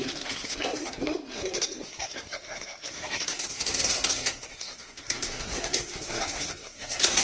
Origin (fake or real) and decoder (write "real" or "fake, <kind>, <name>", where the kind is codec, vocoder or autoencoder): fake, codec, SNAC